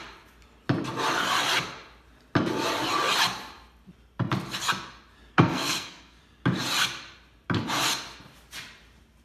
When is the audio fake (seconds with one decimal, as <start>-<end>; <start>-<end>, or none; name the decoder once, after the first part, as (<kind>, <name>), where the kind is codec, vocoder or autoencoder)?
5.3-6.2 (codec, SNAC)